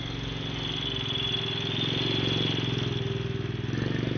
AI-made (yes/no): no